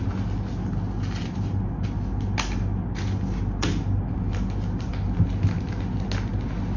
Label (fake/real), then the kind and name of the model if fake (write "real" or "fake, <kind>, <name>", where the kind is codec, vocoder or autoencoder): real